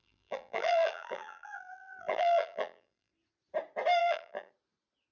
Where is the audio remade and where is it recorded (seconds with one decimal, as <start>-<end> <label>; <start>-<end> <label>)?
0.0-3.1 remade; 3.1-4.0 recorded; 4.0-4.5 remade; 4.5-5.1 recorded